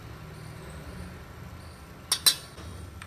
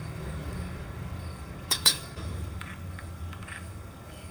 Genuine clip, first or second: first